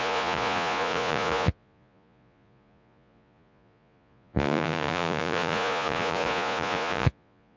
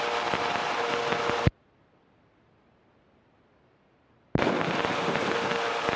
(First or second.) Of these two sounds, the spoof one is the first